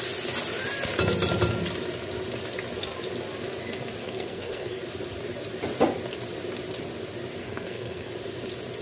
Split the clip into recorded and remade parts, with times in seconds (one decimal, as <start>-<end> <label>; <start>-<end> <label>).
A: 0.0-4.0 recorded; 4.0-4.8 remade; 4.8-7.4 recorded; 7.4-8.1 remade; 8.1-8.8 recorded